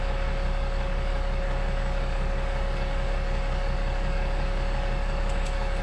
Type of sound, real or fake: fake